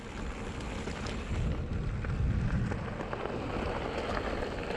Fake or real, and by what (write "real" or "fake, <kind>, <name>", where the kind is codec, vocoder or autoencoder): real